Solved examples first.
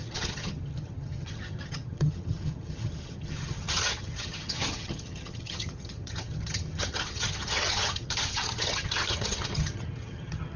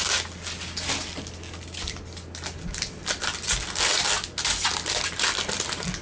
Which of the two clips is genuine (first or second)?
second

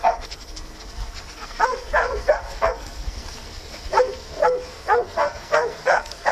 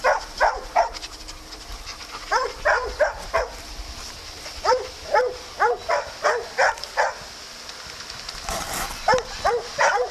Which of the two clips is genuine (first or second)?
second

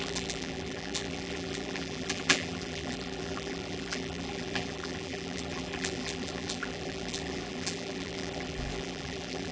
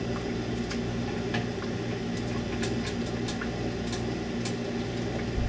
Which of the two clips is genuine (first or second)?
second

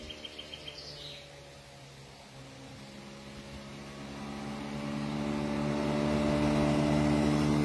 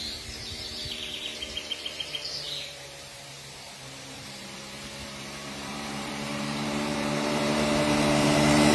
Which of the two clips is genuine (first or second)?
first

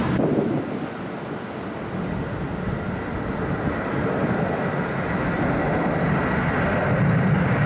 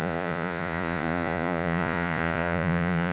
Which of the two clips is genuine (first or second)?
first